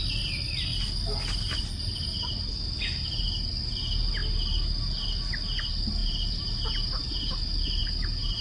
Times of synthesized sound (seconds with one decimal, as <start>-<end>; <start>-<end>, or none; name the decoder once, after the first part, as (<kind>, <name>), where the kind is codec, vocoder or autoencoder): 6.0-7.3 (vocoder, BigVGAN v2); 7.8-8.4